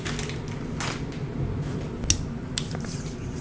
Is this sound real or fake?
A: real